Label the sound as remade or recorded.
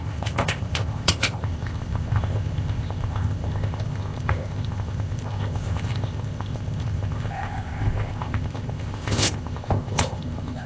remade